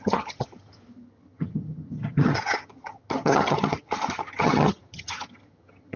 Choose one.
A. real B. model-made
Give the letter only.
B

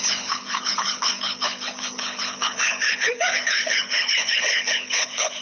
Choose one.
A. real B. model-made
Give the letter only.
B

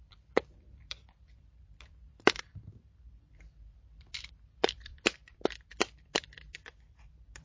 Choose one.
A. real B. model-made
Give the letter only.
B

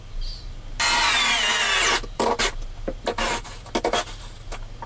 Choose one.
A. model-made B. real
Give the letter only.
B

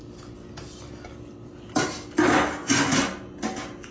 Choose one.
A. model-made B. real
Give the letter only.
B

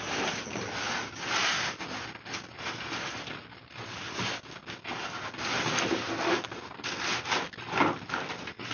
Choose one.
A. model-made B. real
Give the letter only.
B